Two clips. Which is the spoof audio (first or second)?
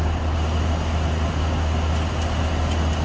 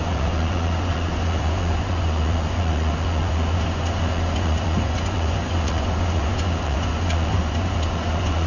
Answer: second